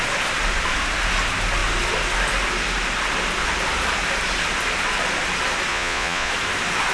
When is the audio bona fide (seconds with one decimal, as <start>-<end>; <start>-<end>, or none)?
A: 0.0-5.7; 6.3-6.9